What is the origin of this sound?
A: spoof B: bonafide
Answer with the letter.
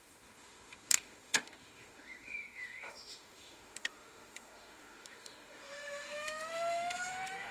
A